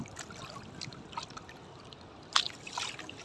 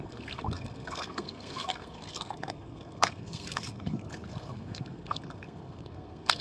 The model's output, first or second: second